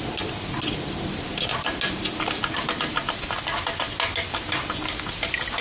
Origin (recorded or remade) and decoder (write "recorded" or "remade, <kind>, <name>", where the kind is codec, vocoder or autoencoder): recorded